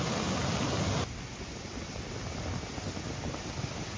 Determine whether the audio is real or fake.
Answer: real